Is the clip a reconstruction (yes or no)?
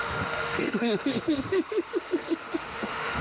yes